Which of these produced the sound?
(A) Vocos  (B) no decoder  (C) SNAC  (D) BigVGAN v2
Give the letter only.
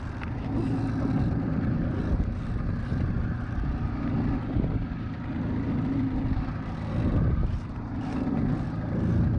B